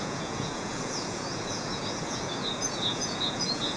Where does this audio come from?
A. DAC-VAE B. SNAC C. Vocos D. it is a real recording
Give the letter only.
C